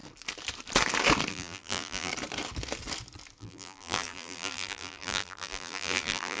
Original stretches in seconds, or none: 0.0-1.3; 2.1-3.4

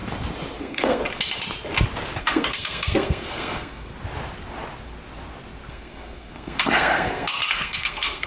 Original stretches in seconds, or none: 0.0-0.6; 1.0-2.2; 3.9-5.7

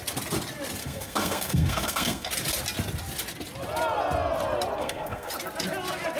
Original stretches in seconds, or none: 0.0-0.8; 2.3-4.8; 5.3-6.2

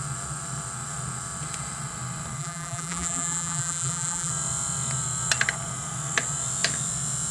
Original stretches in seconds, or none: 0.0-2.4; 4.3-7.3

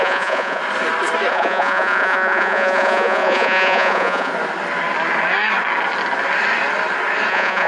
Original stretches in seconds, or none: 0.6-1.3; 4.3-7.3